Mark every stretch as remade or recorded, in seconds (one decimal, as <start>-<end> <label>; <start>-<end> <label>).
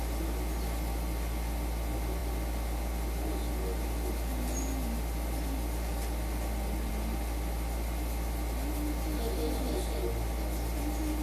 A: 0.0-11.2 recorded